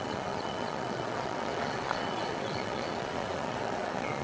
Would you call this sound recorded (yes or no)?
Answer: no